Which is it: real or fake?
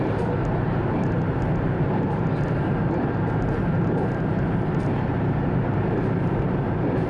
fake